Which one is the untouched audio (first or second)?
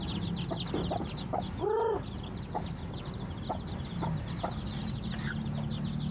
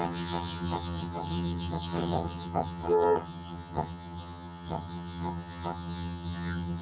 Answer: first